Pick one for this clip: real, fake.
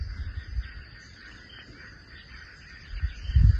real